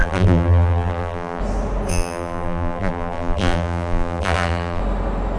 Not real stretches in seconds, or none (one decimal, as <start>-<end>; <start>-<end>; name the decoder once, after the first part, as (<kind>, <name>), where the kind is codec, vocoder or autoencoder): 0.0-1.4 (vocoder, BigVGAN v2); 1.9-4.8